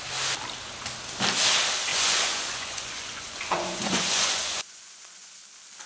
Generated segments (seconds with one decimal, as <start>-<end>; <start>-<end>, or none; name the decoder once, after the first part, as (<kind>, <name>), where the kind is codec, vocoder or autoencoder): 1.9-5.4 (vocoder, Vocos)